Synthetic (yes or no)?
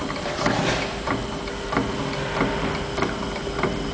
no